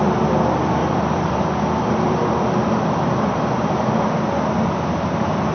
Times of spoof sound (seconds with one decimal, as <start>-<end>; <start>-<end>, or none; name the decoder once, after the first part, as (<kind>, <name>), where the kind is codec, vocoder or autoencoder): 0.8-4.1 (vocoder, BigVGAN v2)